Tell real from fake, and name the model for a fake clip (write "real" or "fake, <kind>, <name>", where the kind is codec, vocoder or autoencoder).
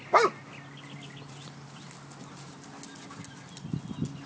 real